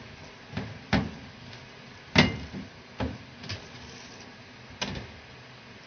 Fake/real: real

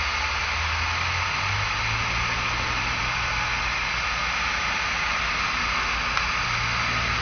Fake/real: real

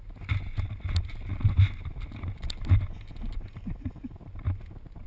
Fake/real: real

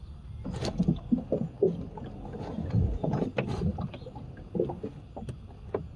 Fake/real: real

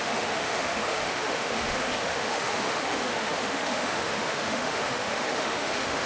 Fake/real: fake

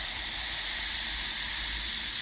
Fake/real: real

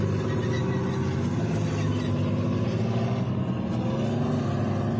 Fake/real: real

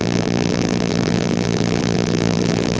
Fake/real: fake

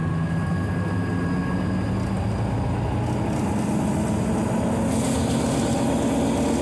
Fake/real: real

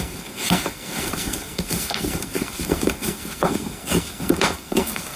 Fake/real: fake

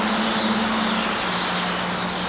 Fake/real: real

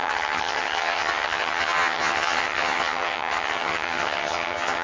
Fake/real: fake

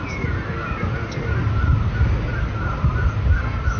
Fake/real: real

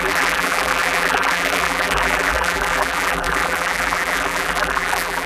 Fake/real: fake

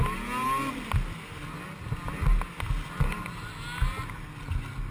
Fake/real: real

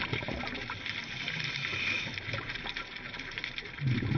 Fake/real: real